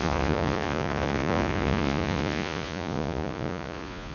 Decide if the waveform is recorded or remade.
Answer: remade